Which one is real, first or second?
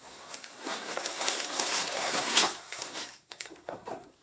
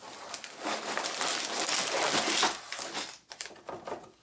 second